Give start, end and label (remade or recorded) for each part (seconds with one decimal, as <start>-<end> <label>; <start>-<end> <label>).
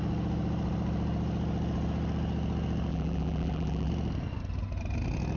0.0-2.9 recorded; 2.9-3.9 remade; 3.9-5.4 recorded